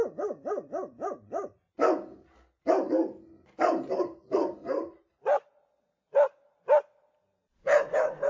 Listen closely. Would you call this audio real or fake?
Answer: real